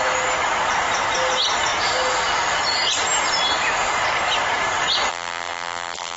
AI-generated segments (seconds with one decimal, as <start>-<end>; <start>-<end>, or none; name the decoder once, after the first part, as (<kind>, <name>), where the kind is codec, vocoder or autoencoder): 5.1-6.2 (vocoder, BigVGAN v2)